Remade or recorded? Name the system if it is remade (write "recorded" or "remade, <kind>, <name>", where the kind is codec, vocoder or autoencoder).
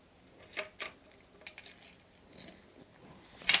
recorded